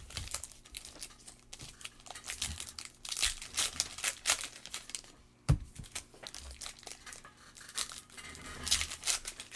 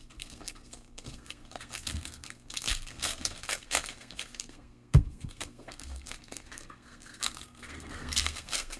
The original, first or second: first